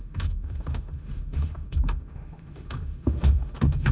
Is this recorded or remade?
remade